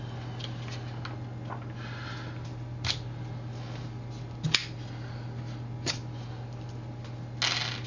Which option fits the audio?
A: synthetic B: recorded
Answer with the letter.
B